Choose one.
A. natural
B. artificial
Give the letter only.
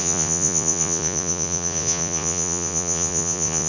B